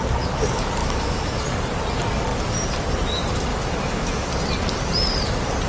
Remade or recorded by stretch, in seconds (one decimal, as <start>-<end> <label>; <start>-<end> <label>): 0.0-0.8 recorded; 0.8-1.4 remade; 1.4-3.5 recorded; 3.5-4.3 remade; 4.3-5.7 recorded